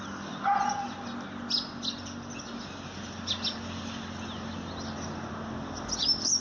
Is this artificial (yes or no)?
no